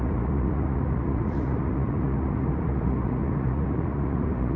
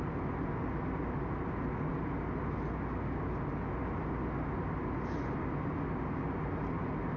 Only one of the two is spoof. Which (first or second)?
first